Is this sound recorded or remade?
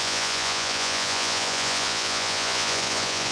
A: remade